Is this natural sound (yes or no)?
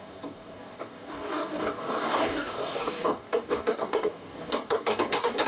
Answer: no